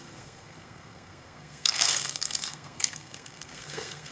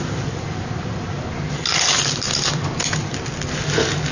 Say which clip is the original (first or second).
second